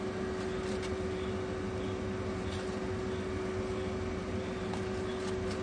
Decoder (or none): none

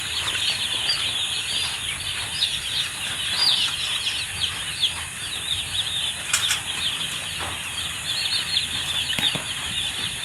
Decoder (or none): none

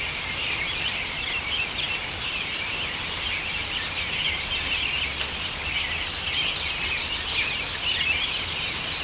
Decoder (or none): none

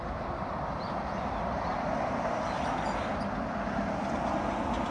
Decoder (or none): none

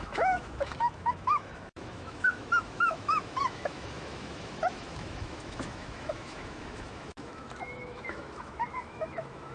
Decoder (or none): autoencoder, DAC-VAE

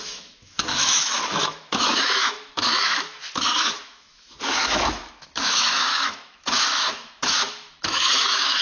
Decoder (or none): autoencoder, DAC-VAE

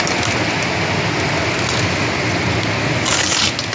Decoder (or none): none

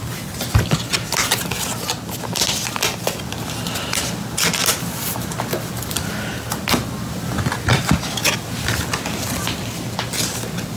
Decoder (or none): none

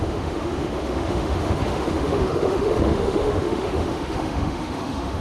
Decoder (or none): autoencoder, DAC-VAE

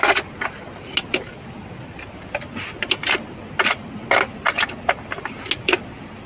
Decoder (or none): none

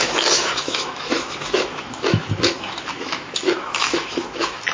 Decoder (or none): autoencoder, DAC-VAE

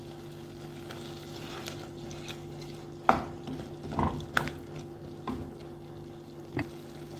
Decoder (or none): none